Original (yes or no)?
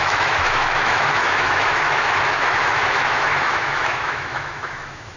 no